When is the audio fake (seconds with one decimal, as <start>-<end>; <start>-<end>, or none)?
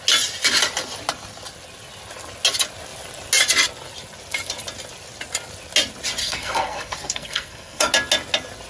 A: 6.2-7.9